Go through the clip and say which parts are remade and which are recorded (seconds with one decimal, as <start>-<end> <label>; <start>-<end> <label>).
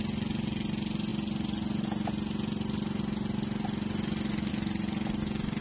0.0-5.6 recorded